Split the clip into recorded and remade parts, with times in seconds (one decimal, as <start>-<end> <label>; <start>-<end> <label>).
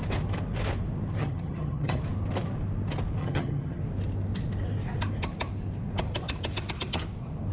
0.0-1.2 recorded; 1.2-2.0 remade; 2.0-3.2 recorded; 3.2-3.8 remade; 3.8-7.5 recorded